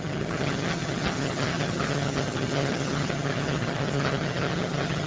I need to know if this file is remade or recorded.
remade